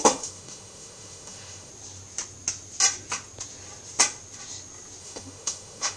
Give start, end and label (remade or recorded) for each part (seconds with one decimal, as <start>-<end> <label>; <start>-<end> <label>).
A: 0.0-1.7 remade; 1.7-5.0 recorded; 5.0-6.0 remade